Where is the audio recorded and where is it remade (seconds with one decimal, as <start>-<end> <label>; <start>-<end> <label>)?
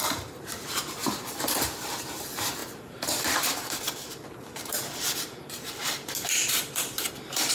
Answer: 0.0-7.5 remade